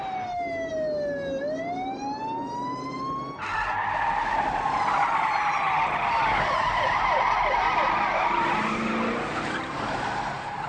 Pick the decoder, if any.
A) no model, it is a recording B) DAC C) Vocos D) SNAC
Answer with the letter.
A